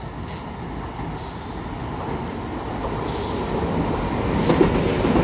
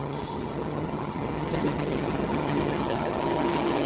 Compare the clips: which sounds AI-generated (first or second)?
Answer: second